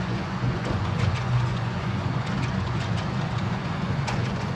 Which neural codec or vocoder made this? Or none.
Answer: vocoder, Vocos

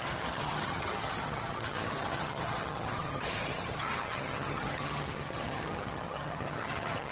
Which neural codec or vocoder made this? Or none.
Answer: vocoder, HiFi-GAN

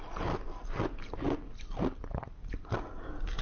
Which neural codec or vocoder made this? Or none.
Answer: none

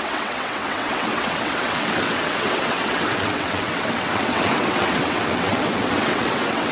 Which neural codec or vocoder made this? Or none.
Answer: vocoder, WaveNeXt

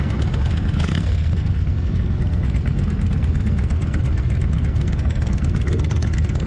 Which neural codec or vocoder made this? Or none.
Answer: codec, SNAC